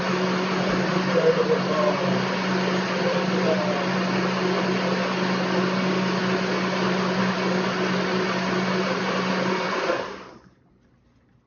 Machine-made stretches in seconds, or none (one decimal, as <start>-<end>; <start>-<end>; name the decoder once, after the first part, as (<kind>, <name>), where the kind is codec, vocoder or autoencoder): none